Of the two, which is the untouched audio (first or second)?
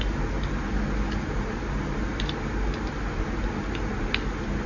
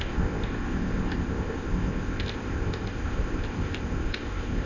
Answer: first